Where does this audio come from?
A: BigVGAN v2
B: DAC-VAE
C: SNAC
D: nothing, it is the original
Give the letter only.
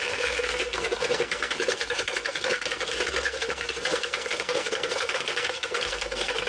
C